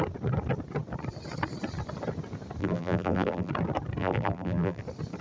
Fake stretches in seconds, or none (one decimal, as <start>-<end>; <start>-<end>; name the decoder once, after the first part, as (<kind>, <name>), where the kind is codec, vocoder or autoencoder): 2.6-3.5 (vocoder, BigVGAN v2); 4.0-4.8